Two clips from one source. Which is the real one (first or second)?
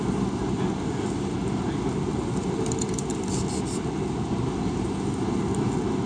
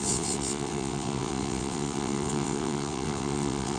first